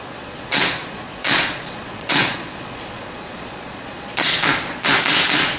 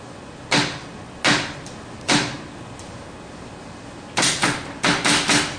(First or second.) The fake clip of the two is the first